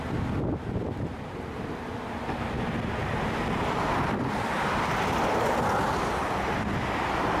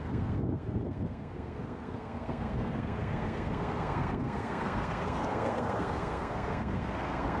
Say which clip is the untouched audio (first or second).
first